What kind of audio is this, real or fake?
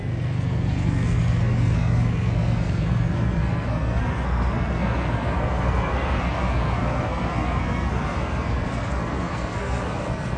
fake